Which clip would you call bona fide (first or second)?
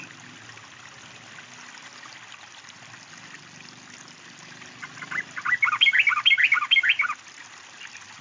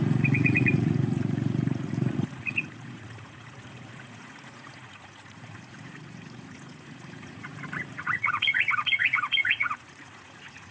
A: first